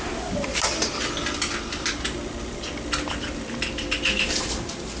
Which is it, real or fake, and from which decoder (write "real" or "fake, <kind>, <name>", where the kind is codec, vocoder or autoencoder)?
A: real